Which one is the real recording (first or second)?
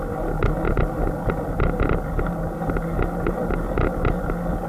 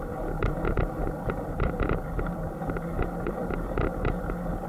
first